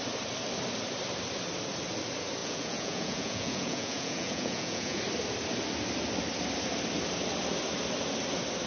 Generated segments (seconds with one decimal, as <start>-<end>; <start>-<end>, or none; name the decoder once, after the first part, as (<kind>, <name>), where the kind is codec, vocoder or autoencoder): 2.4-5.0 (vocoder, Vocos)